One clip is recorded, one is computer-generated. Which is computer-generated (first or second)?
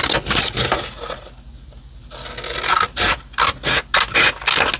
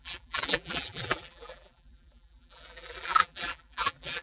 second